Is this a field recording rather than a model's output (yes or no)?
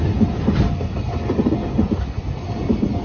yes